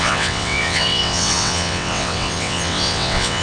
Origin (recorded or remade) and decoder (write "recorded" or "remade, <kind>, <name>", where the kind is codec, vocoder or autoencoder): remade, vocoder, WaveNeXt